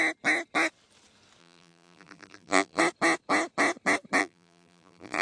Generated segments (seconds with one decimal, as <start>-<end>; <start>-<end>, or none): 1.4-2.8; 4.2-5.2